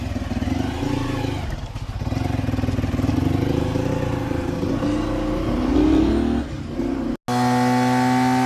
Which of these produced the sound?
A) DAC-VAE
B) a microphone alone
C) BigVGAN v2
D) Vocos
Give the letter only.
B